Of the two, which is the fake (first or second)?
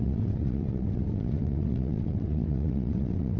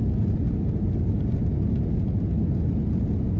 first